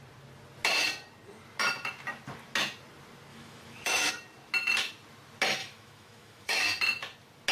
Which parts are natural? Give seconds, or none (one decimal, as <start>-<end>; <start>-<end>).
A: 0.0-3.3; 4.1-5.6; 6.6-7.5